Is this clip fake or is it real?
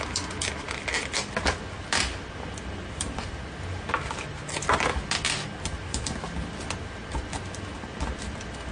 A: real